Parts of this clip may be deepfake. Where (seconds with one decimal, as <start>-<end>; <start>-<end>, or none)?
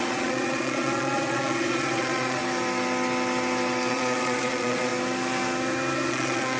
0.0-2.4; 3.9-4.9; 6.1-6.6